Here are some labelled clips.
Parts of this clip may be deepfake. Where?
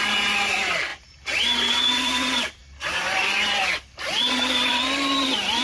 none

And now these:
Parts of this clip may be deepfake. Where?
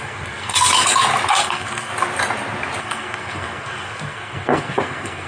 0.0-0.7 (codec, SNAC); 1.3-1.9; 2.8-5.3